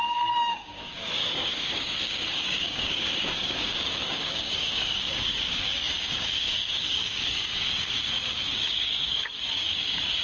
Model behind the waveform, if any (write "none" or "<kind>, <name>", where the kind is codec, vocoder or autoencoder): codec, DAC